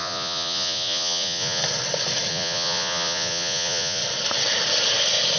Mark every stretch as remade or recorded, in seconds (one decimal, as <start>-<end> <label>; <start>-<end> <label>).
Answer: 0.0-1.6 remade; 1.6-2.3 recorded; 2.3-4.0 remade; 4.0-5.4 recorded